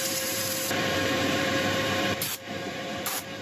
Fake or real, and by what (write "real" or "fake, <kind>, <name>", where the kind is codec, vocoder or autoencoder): fake, vocoder, BigVGAN v2